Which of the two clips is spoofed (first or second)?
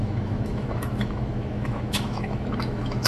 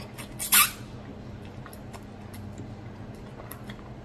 first